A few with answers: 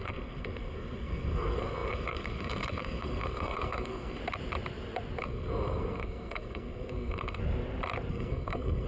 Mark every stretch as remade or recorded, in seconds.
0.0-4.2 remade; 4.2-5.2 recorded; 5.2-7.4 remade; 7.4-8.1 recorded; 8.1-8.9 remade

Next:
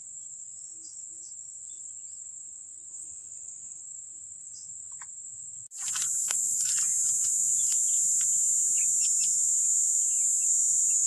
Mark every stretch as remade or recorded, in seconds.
0.0-2.9 recorded; 2.9-3.8 remade; 3.8-6.2 recorded; 6.2-6.7 remade; 6.7-11.1 recorded

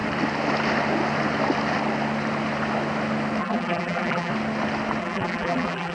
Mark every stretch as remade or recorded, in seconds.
0.0-3.4 recorded; 3.4-4.3 remade; 4.3-5.0 recorded; 5.0-5.9 remade